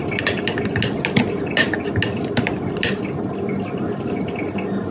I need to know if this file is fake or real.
real